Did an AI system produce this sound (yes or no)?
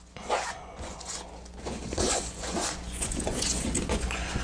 yes